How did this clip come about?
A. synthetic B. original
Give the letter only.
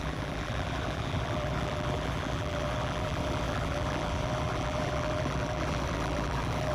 A